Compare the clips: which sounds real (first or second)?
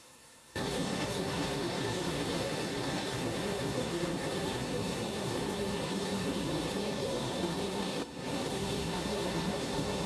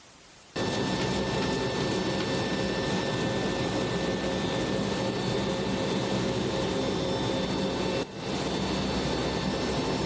second